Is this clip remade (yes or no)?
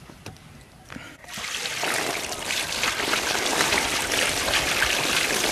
no